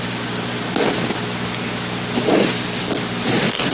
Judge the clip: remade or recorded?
recorded